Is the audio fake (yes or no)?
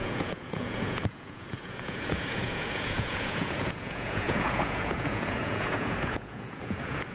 yes